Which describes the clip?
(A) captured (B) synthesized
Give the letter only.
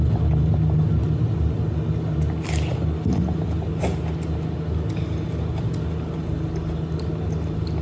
A